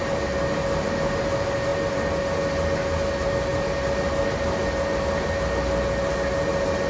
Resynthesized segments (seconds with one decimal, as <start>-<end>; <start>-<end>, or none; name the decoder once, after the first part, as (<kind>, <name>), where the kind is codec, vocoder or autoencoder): none